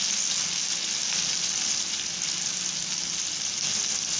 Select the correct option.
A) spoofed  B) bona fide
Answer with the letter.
B